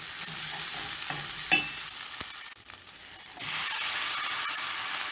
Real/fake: real